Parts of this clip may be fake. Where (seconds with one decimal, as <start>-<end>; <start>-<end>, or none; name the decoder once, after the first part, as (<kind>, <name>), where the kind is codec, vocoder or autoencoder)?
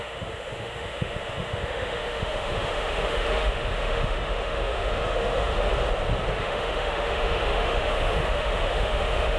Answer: 0.0-5.7 (autoencoder, DAC-VAE); 6.4-9.4